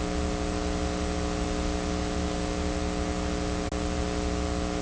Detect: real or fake real